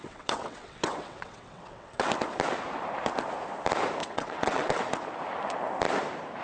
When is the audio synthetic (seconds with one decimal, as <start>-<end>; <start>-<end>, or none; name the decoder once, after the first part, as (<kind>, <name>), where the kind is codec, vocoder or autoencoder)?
0.0-2.1 (vocoder, WaveNeXt); 4.0-4.8